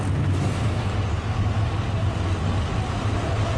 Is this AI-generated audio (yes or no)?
no